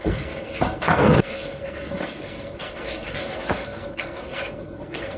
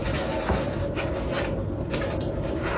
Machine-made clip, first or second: first